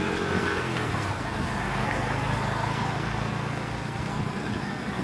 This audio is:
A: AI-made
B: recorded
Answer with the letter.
A